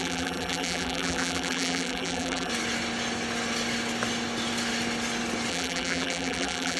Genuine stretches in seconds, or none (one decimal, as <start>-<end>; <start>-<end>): 2.5-5.5